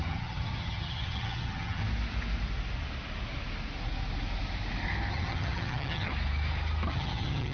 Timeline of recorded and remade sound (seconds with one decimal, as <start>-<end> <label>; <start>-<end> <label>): 0.0-1.8 remade; 1.8-5.1 recorded; 5.1-6.1 remade; 6.1-6.9 recorded; 6.9-7.5 remade